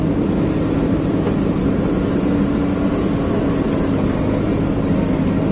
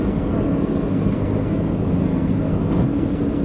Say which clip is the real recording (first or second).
first